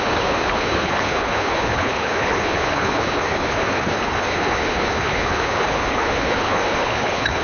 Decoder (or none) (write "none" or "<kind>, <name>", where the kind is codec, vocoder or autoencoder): codec, HILCodec